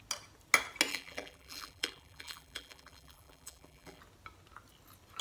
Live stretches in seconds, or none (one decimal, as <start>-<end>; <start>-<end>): 0.0-0.9; 4.0-5.2

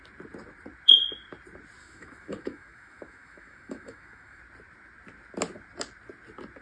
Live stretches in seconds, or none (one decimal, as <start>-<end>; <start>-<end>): 0.0-1.8; 4.4-6.6

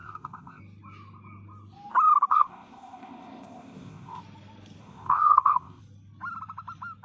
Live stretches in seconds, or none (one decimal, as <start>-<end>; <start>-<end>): 0.6-2.3; 4.2-4.8; 5.8-7.0

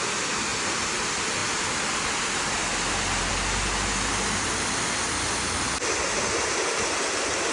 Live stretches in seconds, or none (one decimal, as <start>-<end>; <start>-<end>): 0.0-7.5

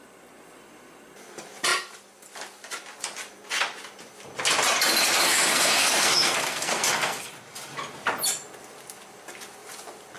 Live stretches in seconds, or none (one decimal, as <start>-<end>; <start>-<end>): 0.0-5.2; 7.3-10.2